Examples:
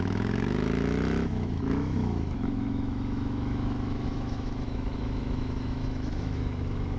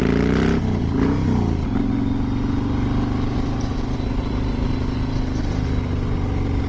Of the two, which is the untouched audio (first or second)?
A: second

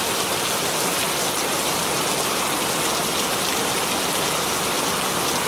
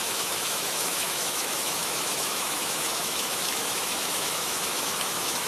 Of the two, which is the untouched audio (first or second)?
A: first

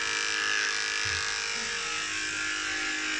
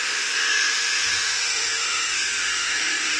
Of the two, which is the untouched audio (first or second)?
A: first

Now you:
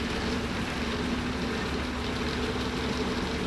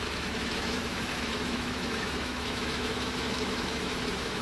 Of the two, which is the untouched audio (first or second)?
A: first